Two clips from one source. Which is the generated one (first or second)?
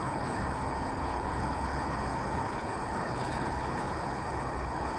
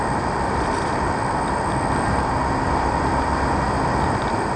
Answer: first